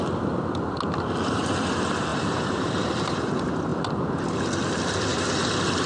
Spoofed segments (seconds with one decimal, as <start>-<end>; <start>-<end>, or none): 2.1-3.3; 3.7-4.4; 5.1-5.9